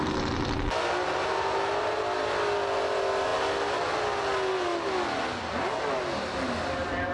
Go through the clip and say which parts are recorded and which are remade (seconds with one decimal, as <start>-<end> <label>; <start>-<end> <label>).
0.0-7.1 recorded